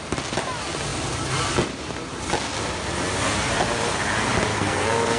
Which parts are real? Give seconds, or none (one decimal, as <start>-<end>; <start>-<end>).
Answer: 0.0-4.5